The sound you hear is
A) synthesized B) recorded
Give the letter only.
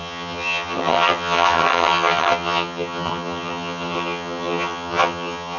A